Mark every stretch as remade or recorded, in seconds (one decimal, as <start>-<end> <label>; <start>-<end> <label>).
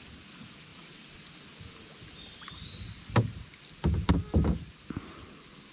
0.0-5.7 recorded